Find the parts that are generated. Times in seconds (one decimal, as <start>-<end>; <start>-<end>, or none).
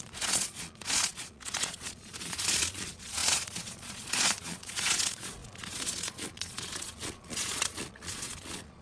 0.0-8.8